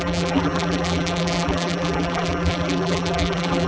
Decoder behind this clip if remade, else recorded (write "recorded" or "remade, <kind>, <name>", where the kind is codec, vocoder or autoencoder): remade, vocoder, BigVGAN v2